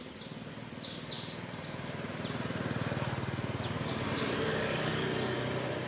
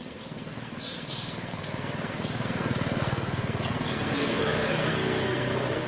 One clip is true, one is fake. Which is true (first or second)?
first